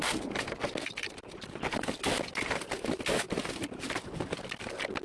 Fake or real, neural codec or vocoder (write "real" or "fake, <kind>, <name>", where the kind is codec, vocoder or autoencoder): real